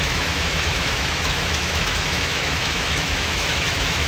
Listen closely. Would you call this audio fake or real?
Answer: fake